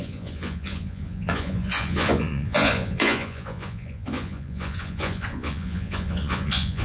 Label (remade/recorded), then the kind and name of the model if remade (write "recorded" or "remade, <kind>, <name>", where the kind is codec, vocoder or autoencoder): remade, vocoder, Vocos